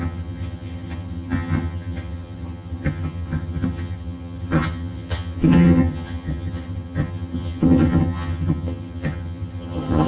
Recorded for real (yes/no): no